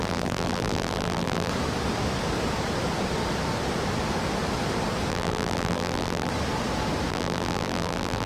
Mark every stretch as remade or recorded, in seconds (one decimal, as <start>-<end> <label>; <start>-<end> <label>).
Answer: 0.0-1.5 remade; 1.5-5.1 recorded; 5.1-6.3 remade; 6.3-7.1 recorded; 7.1-8.3 remade